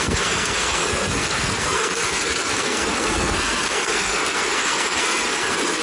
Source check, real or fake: fake